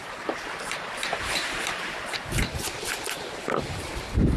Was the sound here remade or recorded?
remade